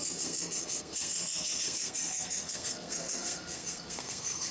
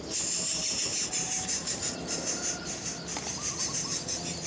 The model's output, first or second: first